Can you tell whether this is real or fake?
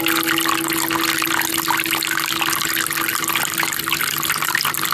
real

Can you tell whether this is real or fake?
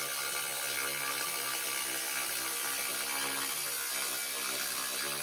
real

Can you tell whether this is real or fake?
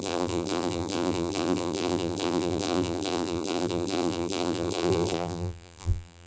fake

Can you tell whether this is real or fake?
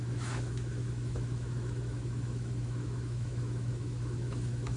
fake